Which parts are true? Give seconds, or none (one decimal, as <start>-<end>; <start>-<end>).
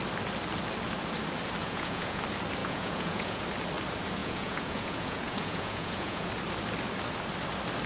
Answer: 0.0-1.6; 2.2-2.6; 3.4-4.2; 6.3-7.9